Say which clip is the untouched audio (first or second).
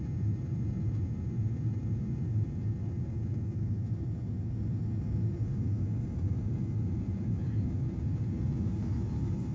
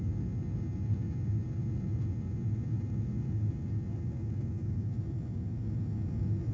second